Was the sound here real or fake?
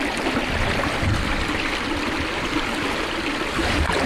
real